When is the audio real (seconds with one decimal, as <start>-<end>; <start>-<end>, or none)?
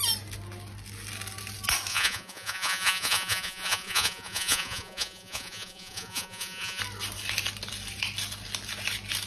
0.0-1.9; 6.8-9.3